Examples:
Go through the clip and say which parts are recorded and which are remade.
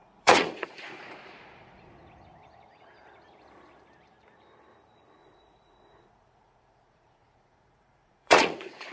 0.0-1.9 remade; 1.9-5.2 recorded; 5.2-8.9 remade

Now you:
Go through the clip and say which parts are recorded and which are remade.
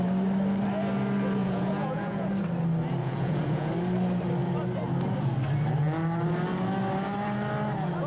0.0-1.4 recorded; 1.4-2.3 remade; 2.3-3.0 recorded; 3.0-3.7 remade; 3.7-8.1 recorded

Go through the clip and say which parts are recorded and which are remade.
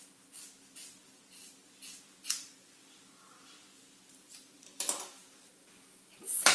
0.0-3.9 recorded; 3.9-6.5 remade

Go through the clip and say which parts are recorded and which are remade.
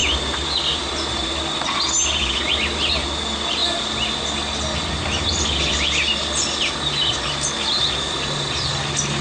0.0-9.2 recorded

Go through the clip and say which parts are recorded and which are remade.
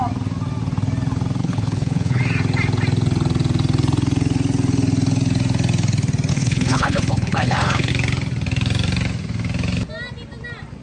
0.0-1.4 recorded; 1.4-2.2 remade; 2.2-6.3 recorded; 6.3-7.9 remade; 7.9-10.8 recorded